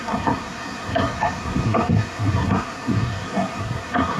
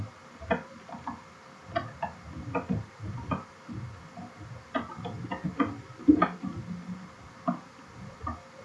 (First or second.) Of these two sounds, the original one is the second